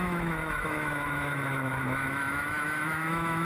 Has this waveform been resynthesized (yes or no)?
yes